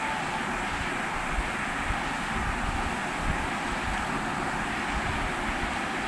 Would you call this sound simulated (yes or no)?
no